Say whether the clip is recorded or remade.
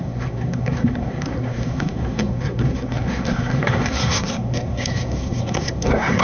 remade